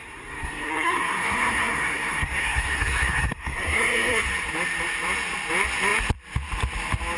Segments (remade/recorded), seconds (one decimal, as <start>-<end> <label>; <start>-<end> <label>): 0.0-4.3 remade; 4.3-7.2 recorded